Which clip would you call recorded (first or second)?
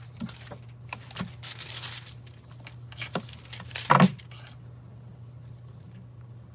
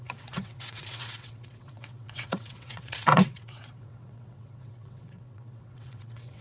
first